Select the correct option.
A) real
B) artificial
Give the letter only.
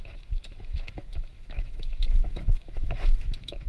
B